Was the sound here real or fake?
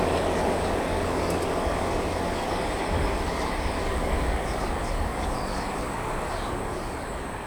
fake